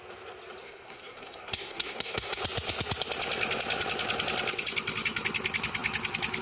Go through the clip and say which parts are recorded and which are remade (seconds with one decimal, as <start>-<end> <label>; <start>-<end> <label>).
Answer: 0.0-0.6 recorded; 0.6-2.4 remade; 2.4-6.4 recorded